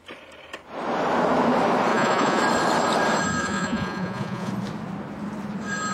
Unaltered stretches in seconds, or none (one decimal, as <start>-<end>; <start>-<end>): 0.0-1.9; 2.4-3.4; 4.5-5.9